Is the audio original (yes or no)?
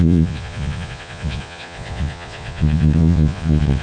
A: no